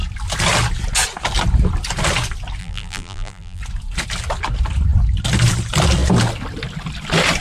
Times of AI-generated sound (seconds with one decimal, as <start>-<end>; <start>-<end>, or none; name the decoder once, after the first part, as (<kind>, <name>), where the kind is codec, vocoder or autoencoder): 2.6-3.6 (vocoder, BigVGAN v2)